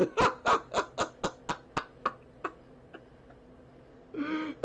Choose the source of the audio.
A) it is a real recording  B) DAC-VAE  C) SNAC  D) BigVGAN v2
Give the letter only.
A